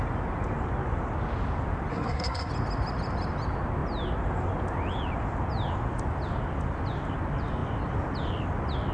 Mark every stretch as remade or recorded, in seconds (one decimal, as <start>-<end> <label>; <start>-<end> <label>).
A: 0.0-1.9 recorded; 1.9-2.5 remade; 2.5-8.9 recorded